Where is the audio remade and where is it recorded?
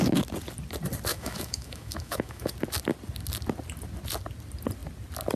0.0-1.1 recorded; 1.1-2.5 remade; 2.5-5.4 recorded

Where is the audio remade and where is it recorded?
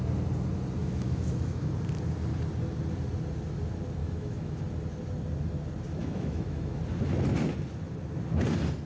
0.0-0.8 recorded; 0.8-1.7 remade; 1.7-4.0 recorded; 4.0-4.6 remade; 4.6-6.0 recorded; 6.0-6.8 remade; 6.8-8.9 recorded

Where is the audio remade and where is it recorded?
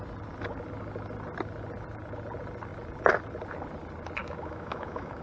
0.0-4.2 recorded; 4.2-5.2 remade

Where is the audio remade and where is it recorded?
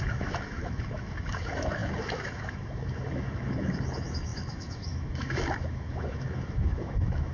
0.0-7.3 remade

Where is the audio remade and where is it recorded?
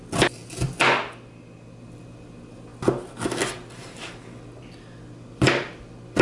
0.0-6.2 recorded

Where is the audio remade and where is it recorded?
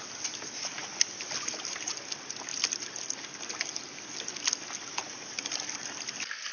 0.0-6.5 recorded